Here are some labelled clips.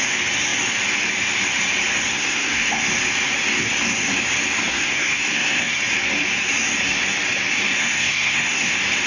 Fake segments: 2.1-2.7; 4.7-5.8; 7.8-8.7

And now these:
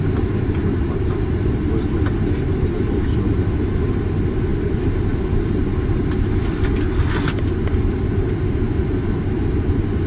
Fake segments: none

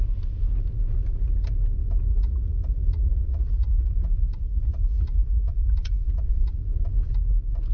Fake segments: 2.1-6.6

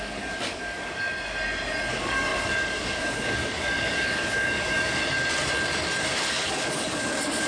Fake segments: 0.0-1.1; 1.9-5.0; 6.0-7.5